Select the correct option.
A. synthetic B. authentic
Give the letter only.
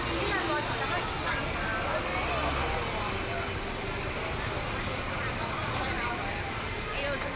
B